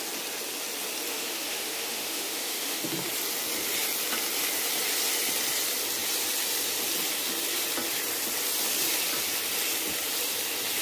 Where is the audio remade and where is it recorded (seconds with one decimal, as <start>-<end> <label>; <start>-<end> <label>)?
0.0-1.1 recorded; 1.1-2.8 remade; 2.8-10.8 recorded

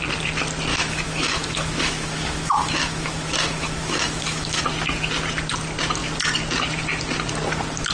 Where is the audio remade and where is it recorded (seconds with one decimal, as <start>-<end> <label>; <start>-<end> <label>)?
0.0-0.7 recorded; 0.7-4.6 remade; 4.6-7.9 recorded

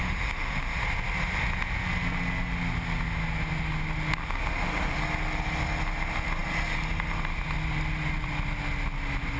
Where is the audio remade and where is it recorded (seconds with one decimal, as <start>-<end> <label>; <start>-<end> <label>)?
0.0-0.8 remade; 0.8-4.2 recorded; 4.2-5.0 remade; 5.0-9.4 recorded

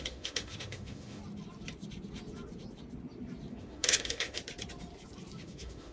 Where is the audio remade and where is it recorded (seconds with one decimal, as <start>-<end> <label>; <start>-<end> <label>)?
0.0-1.2 remade; 1.2-3.5 recorded; 3.5-4.4 remade; 4.4-5.4 recorded; 5.4-5.9 remade

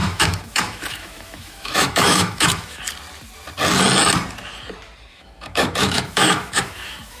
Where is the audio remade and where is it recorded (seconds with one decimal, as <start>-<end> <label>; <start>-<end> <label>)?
0.0-2.8 remade; 2.8-5.1 recorded; 5.1-7.2 remade

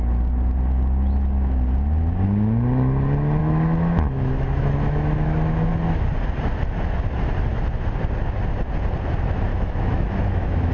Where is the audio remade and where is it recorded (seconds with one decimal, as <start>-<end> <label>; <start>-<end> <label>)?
0.0-3.4 recorded; 3.4-5.7 remade; 5.7-9.5 recorded; 9.5-10.7 remade

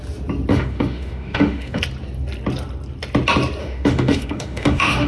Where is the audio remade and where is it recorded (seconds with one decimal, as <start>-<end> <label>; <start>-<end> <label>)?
0.0-0.5 recorded; 0.5-1.8 remade; 1.8-3.6 recorded; 3.6-5.1 remade

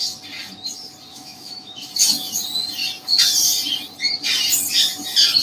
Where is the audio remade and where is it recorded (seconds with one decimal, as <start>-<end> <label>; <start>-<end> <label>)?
0.0-1.1 recorded; 1.1-1.9 remade; 1.9-5.4 recorded